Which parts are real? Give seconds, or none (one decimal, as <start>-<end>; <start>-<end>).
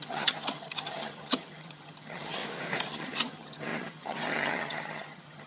2.4-2.9